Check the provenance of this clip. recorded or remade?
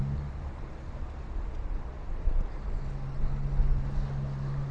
recorded